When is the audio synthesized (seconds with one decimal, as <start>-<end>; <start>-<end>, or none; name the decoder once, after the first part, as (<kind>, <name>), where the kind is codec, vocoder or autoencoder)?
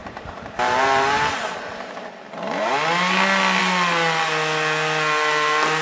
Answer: 0.0-2.7 (vocoder, BigVGAN v2)